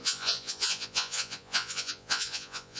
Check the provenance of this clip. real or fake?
fake